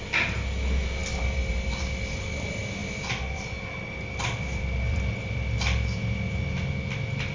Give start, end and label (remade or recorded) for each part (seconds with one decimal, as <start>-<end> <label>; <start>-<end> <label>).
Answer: 0.0-2.8 recorded; 2.8-5.5 remade; 5.5-7.3 recorded